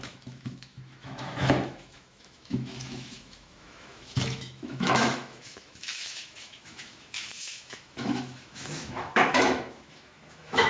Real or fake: fake